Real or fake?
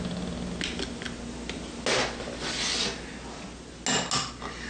real